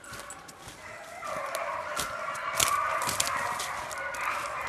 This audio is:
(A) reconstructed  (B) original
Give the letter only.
B